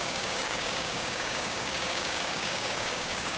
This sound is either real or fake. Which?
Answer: fake